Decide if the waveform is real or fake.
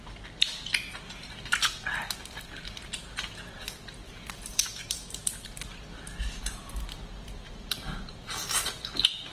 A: real